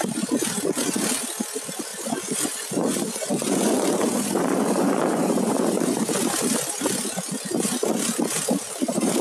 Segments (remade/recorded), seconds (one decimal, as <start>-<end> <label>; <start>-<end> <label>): 0.0-1.9 recorded; 1.9-6.1 remade; 6.1-9.2 recorded